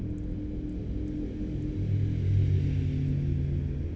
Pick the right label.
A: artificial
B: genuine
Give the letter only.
B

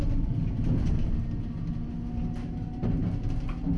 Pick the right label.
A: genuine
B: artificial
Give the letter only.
A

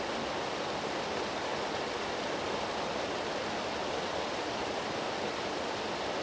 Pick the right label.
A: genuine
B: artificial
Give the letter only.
A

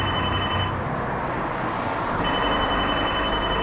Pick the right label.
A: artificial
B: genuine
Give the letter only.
B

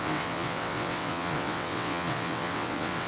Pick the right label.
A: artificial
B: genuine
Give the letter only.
A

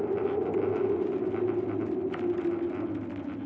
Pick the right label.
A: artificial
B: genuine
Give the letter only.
B